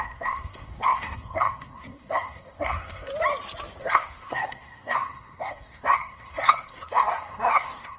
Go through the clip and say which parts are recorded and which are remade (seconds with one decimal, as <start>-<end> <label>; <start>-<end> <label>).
0.0-3.1 remade; 3.1-3.8 recorded; 3.8-8.0 remade